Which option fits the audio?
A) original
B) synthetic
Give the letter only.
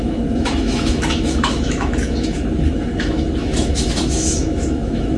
B